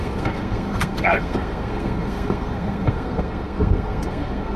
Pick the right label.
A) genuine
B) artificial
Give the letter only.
B